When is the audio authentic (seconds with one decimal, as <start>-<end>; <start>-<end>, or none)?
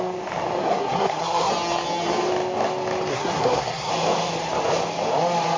0.0-0.6; 1.5-3.1; 3.9-5.6